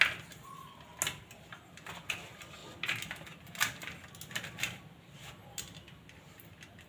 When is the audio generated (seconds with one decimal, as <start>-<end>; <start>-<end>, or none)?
none